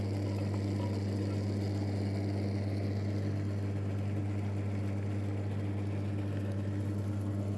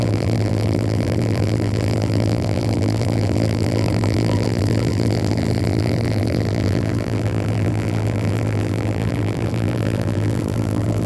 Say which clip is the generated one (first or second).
second